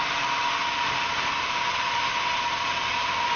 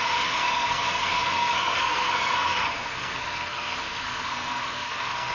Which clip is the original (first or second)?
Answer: first